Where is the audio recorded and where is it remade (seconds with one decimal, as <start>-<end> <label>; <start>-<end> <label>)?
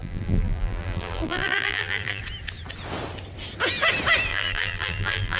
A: 0.0-2.2 remade; 2.2-4.3 recorded; 4.3-5.4 remade